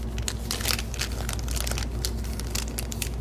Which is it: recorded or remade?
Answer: recorded